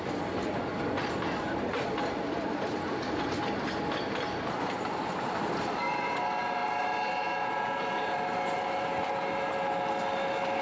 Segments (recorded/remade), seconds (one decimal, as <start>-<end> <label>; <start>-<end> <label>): 0.0-10.6 recorded